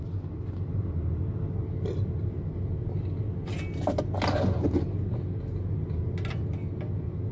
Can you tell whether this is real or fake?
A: real